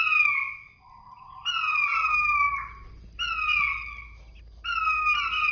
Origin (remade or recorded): recorded